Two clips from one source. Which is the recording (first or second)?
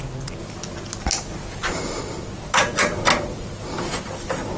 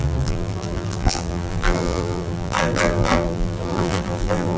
first